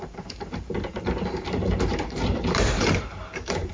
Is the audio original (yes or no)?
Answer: no